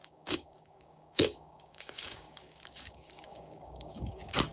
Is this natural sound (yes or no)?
no